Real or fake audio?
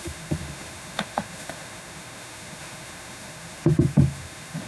fake